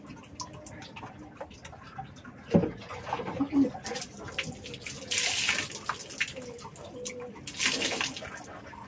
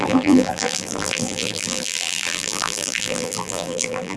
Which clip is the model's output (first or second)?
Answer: second